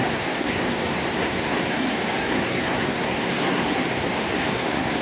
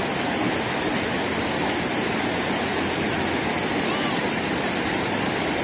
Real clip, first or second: second